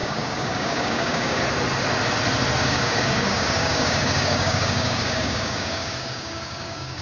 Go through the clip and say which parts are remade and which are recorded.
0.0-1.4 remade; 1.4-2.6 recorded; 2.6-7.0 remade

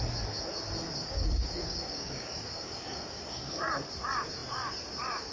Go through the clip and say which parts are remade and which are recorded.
0.0-1.0 recorded; 1.0-3.6 remade; 3.6-5.3 recorded

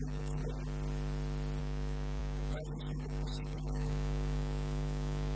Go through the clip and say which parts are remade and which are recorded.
0.0-0.4 remade; 0.4-1.6 recorded; 1.6-5.4 remade

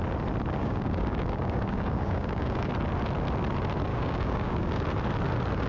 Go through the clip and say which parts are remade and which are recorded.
0.0-0.6 recorded; 0.6-2.7 remade; 2.7-3.9 recorded; 3.9-4.8 remade; 4.8-5.7 recorded

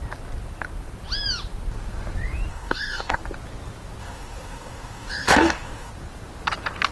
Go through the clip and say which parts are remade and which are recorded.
0.0-2.5 recorded; 2.5-3.2 remade; 3.2-4.0 recorded; 4.0-5.9 remade; 5.9-6.9 recorded

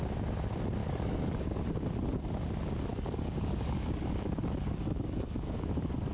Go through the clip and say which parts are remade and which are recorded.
0.0-0.8 recorded; 0.8-1.6 remade; 1.6-2.9 recorded; 2.9-6.1 remade